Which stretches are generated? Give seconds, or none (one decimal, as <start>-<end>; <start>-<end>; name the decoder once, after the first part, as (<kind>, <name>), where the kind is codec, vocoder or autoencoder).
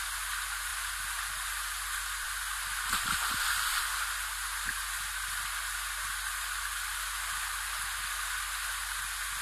none